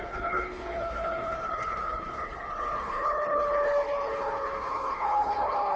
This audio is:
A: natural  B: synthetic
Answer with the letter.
B